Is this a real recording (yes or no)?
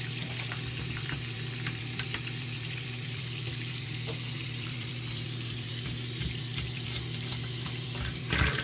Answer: no